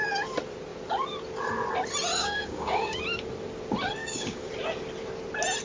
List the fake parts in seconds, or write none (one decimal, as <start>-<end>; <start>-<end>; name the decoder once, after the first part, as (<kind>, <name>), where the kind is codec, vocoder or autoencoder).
2.2-3.0 (codec, DAC); 4.0-4.5